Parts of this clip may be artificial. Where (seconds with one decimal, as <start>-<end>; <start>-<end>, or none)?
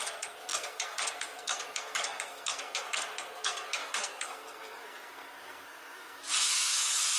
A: 0.0-7.2